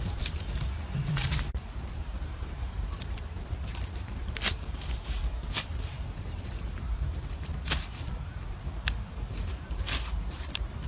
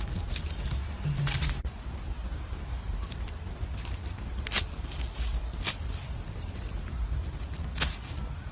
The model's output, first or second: first